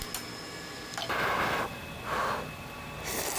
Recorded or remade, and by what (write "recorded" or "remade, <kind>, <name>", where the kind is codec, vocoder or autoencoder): recorded